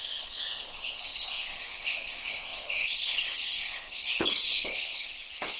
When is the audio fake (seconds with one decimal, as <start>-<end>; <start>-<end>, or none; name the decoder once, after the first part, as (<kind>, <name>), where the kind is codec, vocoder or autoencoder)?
0.0-5.6 (codec, HILCodec)